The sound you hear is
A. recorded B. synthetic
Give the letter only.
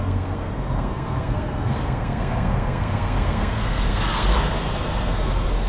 B